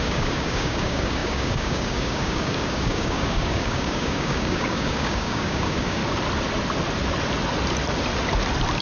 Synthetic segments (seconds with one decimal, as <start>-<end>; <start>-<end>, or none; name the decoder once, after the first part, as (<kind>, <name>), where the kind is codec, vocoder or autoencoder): 0.0-6.0 (codec, DAC)